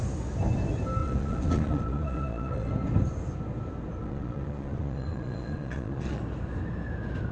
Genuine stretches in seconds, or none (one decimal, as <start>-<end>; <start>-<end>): 0.0-1.0; 2.7-4.0; 6.2-7.3